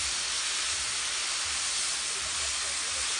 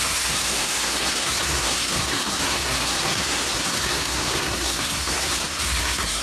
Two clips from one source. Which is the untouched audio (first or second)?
first